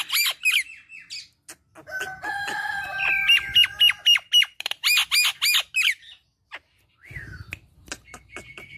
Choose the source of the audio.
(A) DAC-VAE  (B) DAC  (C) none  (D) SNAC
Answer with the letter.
C